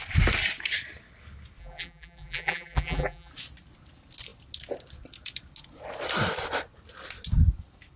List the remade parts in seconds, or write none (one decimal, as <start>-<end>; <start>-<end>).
1.6-3.3